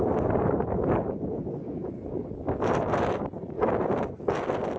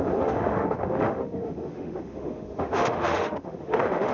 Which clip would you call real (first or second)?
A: first